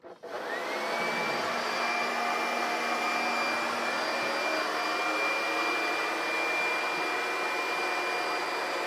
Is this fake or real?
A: real